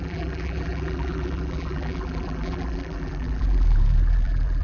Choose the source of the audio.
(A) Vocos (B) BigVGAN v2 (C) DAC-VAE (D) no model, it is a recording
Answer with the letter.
B